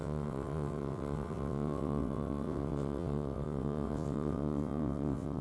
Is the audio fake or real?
fake